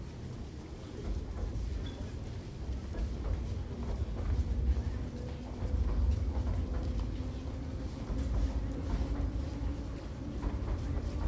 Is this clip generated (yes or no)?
no